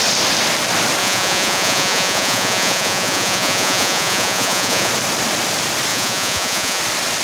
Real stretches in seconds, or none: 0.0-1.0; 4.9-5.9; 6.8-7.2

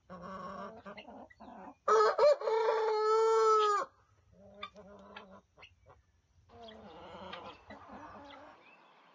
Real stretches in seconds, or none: 0.0-9.1

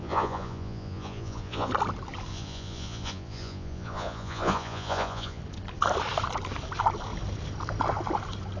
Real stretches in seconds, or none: 1.7-2.3; 5.4-8.6

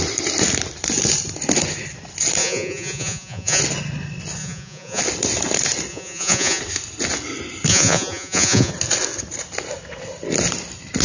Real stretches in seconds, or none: 0.0-2.4; 3.6-4.4; 5.0-5.9; 6.6-7.7; 8.7-11.0

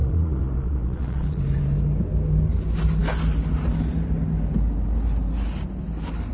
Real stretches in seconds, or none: 1.4-6.3